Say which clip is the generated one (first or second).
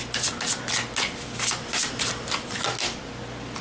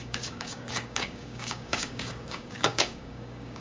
second